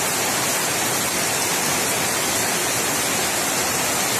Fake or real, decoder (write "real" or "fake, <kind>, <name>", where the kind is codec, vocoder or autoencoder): real